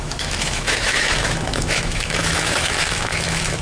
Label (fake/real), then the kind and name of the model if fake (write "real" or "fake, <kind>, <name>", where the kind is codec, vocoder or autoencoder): fake, autoencoder, DAC-VAE